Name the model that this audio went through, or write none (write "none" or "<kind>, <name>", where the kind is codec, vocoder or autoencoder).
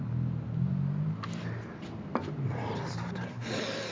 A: none